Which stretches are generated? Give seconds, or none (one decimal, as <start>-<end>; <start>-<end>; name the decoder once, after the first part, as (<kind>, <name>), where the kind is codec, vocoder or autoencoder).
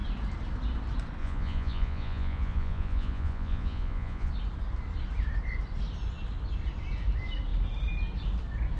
1.2-4.3 (vocoder, Vocos)